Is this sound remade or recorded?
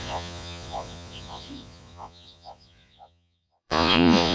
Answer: remade